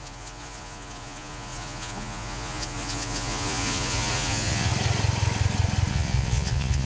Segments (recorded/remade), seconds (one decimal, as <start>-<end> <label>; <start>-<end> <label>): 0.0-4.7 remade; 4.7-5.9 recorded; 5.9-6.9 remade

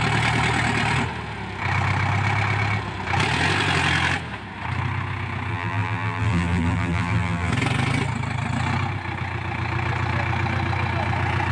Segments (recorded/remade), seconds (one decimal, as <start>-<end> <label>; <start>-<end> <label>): 0.0-5.5 recorded; 5.5-7.5 remade; 7.5-11.5 recorded

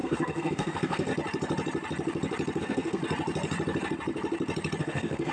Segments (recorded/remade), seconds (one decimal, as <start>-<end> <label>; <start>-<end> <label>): 0.0-1.1 remade; 1.1-2.6 recorded; 2.6-3.0 remade; 3.0-4.8 recorded; 4.8-5.3 remade